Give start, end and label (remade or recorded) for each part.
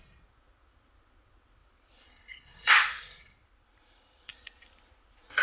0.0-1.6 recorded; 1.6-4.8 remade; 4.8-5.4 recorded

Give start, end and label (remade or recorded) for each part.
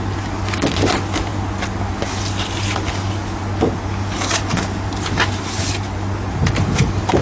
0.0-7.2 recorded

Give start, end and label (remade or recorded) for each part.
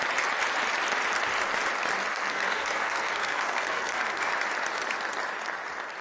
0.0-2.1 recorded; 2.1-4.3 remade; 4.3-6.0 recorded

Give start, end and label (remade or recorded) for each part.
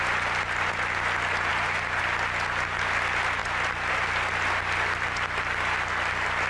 0.0-1.5 recorded; 1.5-2.0 remade; 2.0-6.5 recorded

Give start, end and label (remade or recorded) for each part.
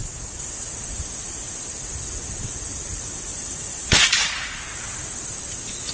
0.0-3.3 recorded; 3.3-4.6 remade; 4.6-5.9 recorded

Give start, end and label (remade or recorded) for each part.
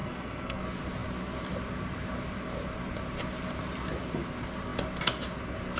0.0-0.6 remade; 0.6-5.8 recorded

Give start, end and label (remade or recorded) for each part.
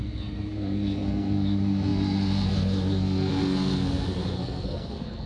0.0-5.3 remade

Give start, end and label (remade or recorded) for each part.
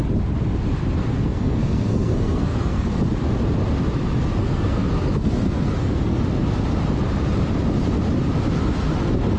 0.0-1.0 recorded; 1.0-2.9 remade; 2.9-4.4 recorded; 4.4-6.2 remade; 6.2-9.4 recorded